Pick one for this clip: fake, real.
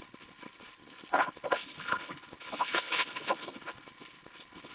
fake